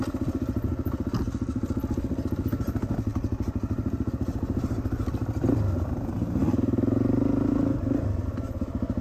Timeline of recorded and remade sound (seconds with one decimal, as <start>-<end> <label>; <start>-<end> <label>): 0.0-9.0 recorded